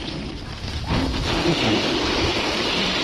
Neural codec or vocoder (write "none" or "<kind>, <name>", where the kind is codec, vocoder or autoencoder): none